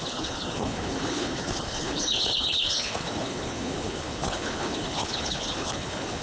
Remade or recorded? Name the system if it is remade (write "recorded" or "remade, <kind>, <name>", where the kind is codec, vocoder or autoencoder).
remade, codec, HILCodec